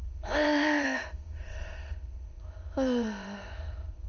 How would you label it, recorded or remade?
remade